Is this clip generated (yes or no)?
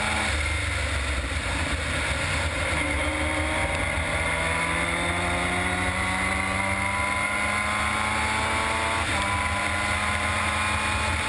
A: no